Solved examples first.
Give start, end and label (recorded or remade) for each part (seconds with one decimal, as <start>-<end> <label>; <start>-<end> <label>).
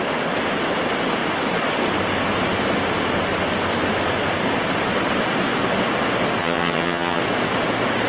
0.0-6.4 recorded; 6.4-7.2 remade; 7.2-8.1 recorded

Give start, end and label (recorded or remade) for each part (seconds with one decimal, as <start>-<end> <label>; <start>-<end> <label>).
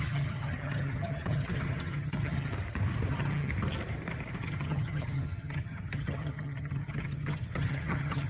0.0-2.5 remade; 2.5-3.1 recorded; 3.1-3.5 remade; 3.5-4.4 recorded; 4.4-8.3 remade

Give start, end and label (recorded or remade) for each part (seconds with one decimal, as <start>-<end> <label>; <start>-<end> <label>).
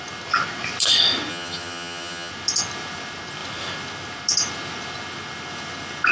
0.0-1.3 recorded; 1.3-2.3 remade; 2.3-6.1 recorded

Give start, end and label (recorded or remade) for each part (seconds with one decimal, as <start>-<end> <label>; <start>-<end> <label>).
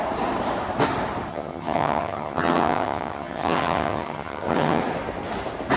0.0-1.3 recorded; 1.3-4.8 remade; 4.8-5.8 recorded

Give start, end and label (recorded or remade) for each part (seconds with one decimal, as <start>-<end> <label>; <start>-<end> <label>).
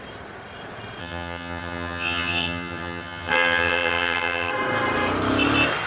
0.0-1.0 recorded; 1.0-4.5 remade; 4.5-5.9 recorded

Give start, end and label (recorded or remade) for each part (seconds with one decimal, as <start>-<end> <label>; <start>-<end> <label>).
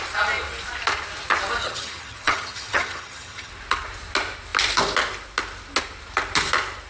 0.0-1.6 recorded; 1.6-3.5 remade; 3.5-6.9 recorded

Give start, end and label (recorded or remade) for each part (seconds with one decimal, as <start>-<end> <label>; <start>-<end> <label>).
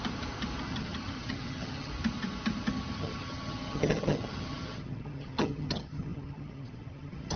0.0-0.6 recorded; 0.6-1.9 remade; 1.9-2.7 recorded; 2.7-7.4 remade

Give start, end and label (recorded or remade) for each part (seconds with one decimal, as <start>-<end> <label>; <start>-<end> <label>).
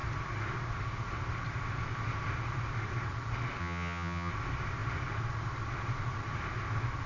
0.0-3.6 recorded; 3.6-4.3 remade; 4.3-7.1 recorded